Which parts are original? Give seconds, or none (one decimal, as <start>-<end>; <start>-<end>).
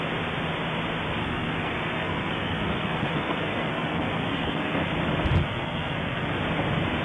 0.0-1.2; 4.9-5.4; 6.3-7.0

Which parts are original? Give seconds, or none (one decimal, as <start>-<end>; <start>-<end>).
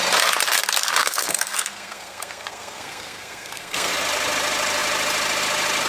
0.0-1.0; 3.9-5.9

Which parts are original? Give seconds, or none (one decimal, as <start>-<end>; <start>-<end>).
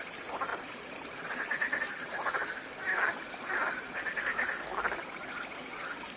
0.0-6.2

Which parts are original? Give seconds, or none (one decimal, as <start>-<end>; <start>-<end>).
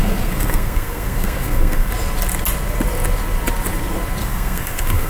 1.9-4.2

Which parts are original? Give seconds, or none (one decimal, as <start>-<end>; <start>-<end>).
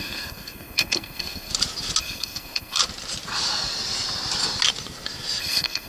1.5-2.0; 2.8-5.4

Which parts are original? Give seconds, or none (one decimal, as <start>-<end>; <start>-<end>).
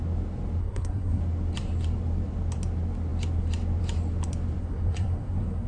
0.0-0.6; 1.2-4.6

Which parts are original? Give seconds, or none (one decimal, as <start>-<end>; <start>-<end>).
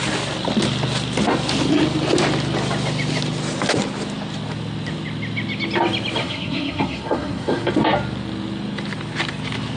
0.0-6.2; 7.7-9.8